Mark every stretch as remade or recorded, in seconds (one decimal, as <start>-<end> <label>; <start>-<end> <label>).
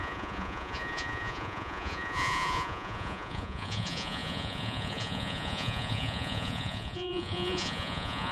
0.0-8.3 remade